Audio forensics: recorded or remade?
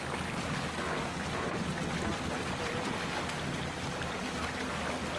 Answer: recorded